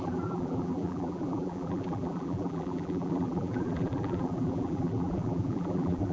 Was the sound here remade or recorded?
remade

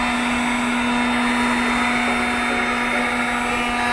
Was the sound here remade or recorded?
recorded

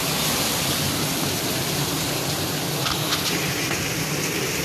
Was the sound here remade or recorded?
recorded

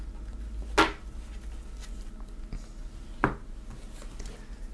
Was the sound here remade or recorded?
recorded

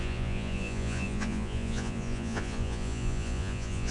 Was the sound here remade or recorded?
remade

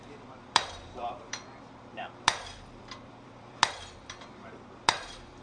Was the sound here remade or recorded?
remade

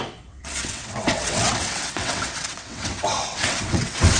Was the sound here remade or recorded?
remade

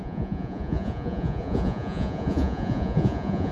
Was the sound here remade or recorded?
remade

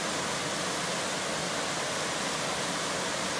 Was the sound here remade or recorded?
recorded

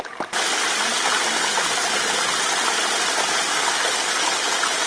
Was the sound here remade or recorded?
recorded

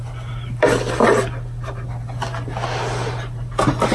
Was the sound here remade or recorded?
recorded